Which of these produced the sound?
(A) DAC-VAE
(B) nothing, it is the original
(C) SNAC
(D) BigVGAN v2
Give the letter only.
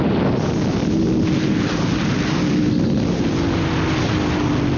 B